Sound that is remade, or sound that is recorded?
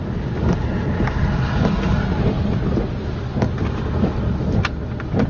recorded